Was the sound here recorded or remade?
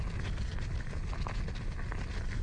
recorded